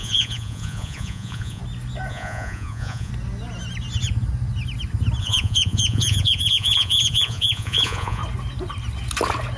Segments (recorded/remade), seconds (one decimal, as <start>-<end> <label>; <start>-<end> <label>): 0.0-1.6 remade; 1.6-2.1 recorded; 2.1-3.1 remade; 3.1-5.2 recorded; 5.2-8.2 remade; 8.2-9.6 recorded